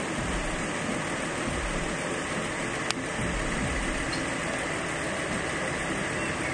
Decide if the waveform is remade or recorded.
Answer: recorded